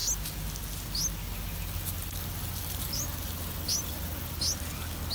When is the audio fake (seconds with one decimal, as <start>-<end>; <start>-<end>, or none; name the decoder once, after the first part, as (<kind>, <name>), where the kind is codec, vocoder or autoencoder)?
none